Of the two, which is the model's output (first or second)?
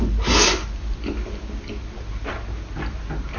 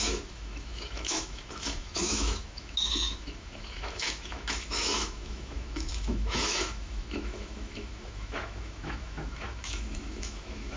second